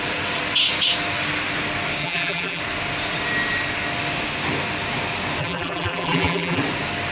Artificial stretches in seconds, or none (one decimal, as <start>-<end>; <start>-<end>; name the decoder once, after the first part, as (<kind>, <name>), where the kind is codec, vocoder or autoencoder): 2.0-2.6 (vocoder, BigVGAN v2); 5.4-6.6